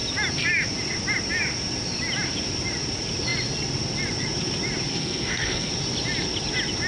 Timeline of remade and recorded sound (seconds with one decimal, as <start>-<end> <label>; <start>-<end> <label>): 0.0-4.9 recorded; 4.9-5.7 remade; 5.7-6.9 recorded